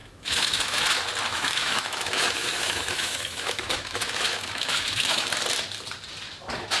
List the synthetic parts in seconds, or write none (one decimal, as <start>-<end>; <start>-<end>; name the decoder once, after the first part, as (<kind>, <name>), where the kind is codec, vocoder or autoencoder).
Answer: 0.0-0.8 (autoencoder, DAC-VAE); 1.3-5.3